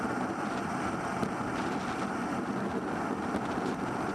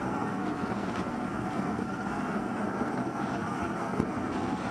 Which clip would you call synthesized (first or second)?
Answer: second